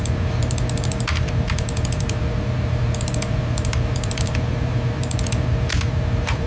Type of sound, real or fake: fake